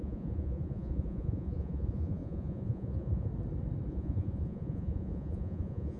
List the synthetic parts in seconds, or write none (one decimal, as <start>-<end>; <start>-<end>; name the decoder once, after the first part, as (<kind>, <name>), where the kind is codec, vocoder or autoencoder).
0.0-3.3 (vocoder, Vocos); 3.9-6.0